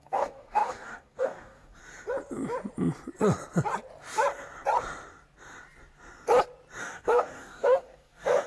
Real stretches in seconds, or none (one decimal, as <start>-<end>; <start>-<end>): 1.8-6.8